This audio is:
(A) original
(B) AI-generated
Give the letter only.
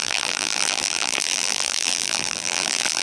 B